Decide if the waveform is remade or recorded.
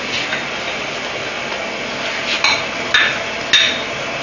recorded